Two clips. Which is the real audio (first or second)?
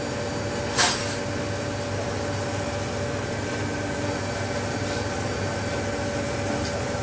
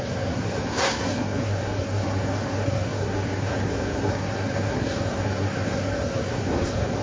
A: first